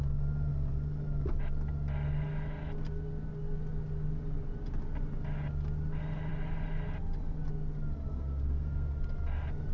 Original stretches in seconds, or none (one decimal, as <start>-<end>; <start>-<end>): 0.0-8.1; 9.0-9.7